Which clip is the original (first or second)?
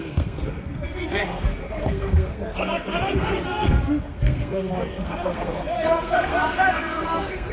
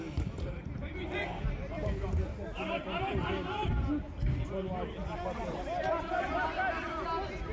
second